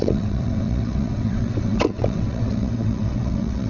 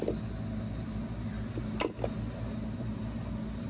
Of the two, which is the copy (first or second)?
first